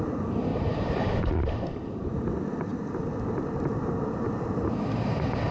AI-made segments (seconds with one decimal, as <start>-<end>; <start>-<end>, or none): 0.5-2.1